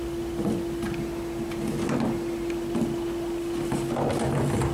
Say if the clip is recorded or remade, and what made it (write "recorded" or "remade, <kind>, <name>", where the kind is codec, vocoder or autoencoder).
recorded